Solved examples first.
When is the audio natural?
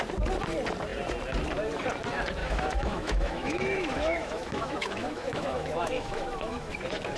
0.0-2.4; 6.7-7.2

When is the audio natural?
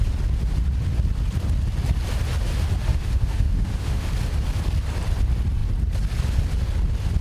0.0-2.9; 4.1-7.2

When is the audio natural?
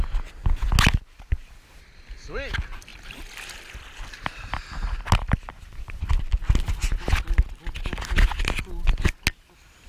0.0-9.9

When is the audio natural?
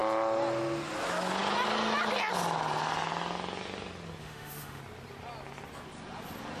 0.0-4.2; 4.8-6.6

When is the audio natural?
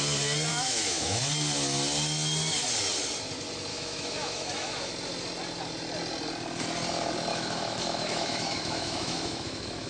0.0-0.5; 1.2-3.7; 4.9-7.3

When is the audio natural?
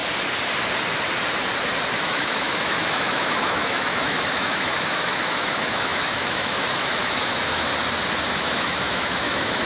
0.0-2.0; 7.7-8.3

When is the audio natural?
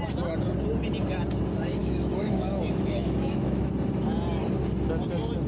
0.0-1.8; 3.7-5.5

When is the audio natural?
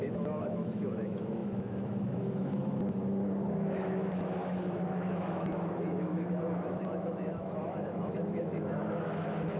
none